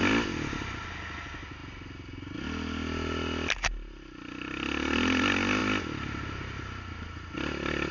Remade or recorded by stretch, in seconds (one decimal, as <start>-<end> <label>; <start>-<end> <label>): 0.0-7.9 recorded